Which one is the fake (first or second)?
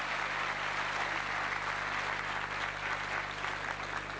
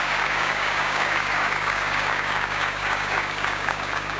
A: second